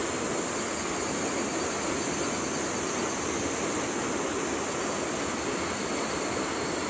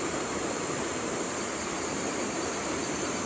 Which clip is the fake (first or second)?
second